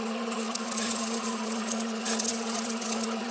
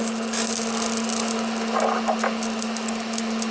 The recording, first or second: second